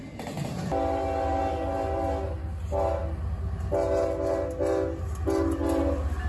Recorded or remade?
recorded